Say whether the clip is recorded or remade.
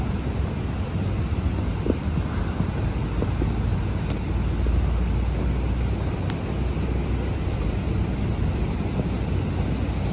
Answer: recorded